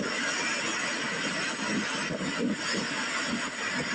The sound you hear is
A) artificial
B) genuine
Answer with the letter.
B